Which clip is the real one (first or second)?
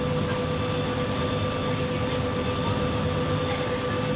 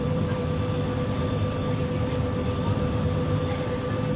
first